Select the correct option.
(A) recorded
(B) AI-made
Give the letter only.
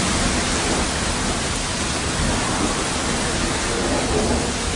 A